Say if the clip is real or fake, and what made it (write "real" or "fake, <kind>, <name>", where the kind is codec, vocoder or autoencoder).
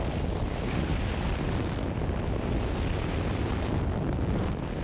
real